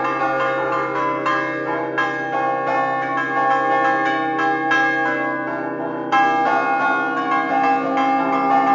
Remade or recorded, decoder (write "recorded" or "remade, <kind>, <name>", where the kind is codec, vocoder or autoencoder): recorded